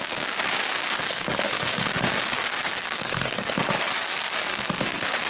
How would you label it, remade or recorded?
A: remade